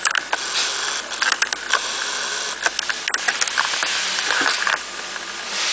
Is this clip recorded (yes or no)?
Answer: yes